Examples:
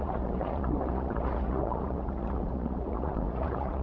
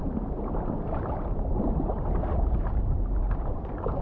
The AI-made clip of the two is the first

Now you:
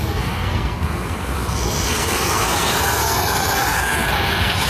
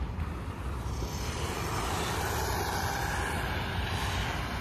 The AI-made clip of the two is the first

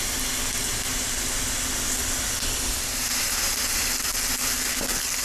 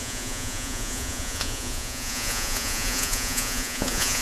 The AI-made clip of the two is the second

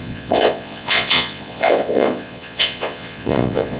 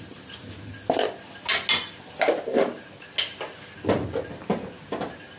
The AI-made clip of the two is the first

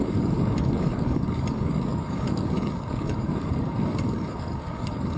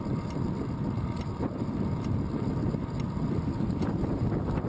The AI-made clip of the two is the first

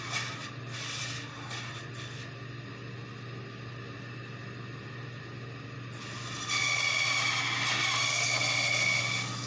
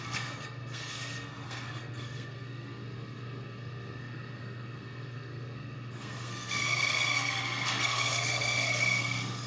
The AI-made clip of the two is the second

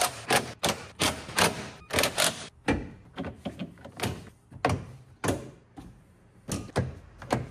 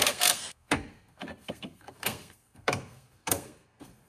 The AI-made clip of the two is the second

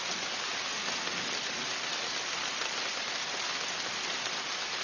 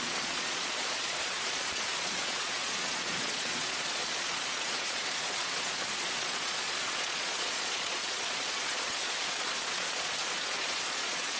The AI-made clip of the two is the second